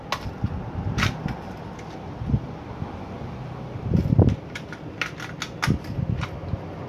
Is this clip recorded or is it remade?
recorded